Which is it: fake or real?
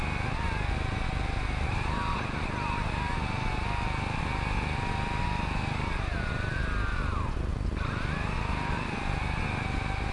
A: real